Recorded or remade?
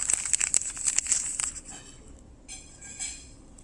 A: recorded